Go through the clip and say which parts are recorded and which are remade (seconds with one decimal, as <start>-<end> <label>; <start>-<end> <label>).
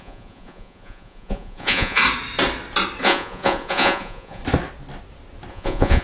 0.0-2.0 remade; 2.0-3.0 recorded; 3.0-4.4 remade; 4.4-5.5 recorded; 5.5-6.0 remade